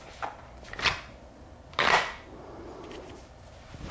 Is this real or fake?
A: real